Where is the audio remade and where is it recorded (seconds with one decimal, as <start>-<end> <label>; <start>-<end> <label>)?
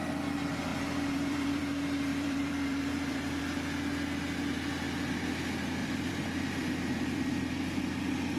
0.0-0.7 recorded; 0.7-1.6 remade; 1.6-2.1 recorded; 2.1-3.4 remade; 3.4-5.8 recorded; 5.8-7.5 remade; 7.5-8.4 recorded